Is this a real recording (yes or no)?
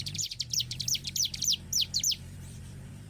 no